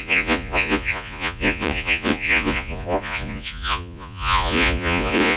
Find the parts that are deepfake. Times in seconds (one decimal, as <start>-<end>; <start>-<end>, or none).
0.0-5.4